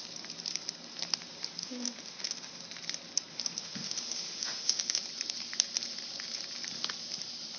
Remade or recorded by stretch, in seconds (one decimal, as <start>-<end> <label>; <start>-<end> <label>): 0.0-1.6 recorded; 1.6-2.6 remade; 2.6-3.3 recorded; 3.3-5.0 remade; 5.0-7.6 recorded